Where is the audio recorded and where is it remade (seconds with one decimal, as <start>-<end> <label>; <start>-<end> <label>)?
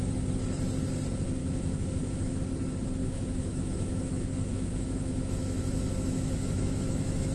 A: 0.0-1.4 recorded; 1.4-2.5 remade; 2.5-3.0 recorded; 3.0-7.3 remade